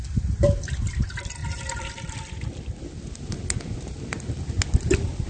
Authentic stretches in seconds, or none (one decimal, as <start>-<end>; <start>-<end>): 0.0-1.4; 2.3-5.3